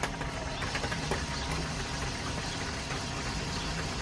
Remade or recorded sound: recorded